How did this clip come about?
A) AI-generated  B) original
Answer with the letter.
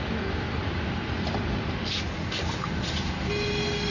B